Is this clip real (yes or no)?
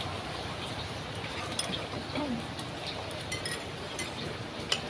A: yes